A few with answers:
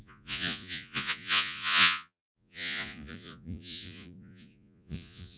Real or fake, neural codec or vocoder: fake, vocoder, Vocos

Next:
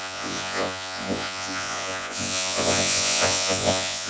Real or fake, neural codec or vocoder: fake, vocoder, Vocos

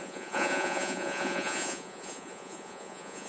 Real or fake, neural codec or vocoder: fake, vocoder, Vocos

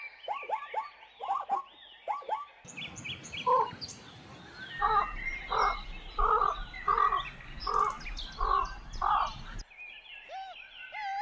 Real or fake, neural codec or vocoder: real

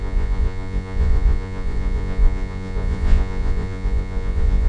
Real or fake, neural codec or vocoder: fake, vocoder, Vocos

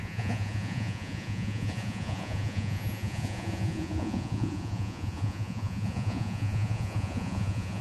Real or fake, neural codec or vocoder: fake, vocoder, Vocos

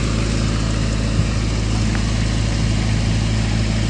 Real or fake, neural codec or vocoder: real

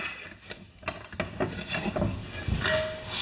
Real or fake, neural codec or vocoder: real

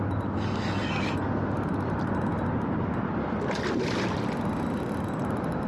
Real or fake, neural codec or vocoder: real